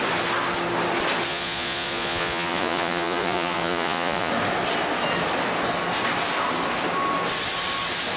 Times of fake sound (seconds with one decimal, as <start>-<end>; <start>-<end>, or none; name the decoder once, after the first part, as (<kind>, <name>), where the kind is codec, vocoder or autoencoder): 1.3-4.3 (vocoder, Vocos)